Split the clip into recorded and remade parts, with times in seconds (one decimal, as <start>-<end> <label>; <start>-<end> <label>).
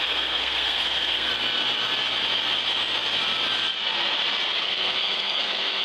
0.0-1.3 remade; 1.3-4.6 recorded; 4.6-5.8 remade